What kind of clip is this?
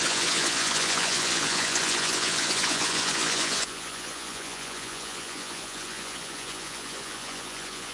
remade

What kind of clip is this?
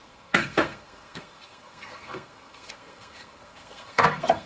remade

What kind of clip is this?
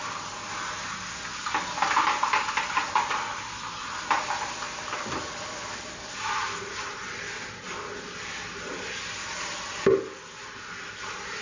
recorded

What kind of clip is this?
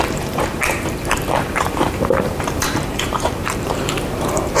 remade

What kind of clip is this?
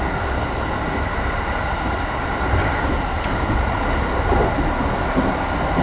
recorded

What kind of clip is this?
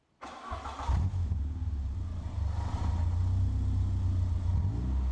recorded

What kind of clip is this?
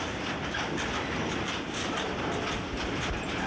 recorded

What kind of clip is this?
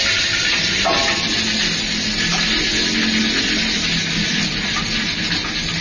recorded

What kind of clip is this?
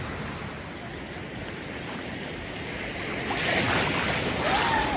recorded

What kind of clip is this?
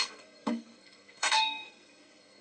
remade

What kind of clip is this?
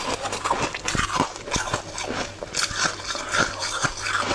recorded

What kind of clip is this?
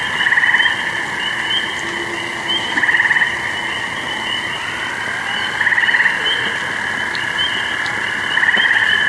recorded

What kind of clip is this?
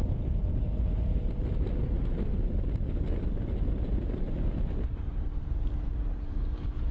recorded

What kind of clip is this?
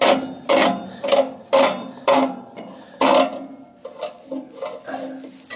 recorded